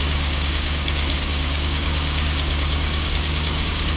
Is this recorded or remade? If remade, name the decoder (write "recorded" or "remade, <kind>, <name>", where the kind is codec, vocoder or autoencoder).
remade, codec, DAC